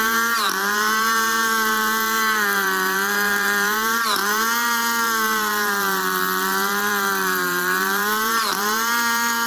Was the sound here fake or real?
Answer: fake